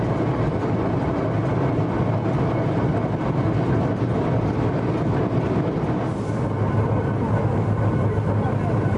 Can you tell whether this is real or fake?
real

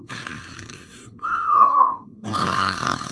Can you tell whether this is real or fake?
fake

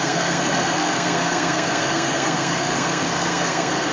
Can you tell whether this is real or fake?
fake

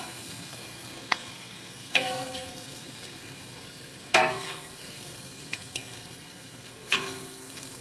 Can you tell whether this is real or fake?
fake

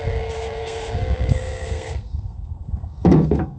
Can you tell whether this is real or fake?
fake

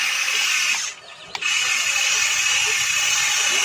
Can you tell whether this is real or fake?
real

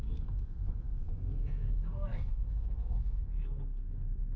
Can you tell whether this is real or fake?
fake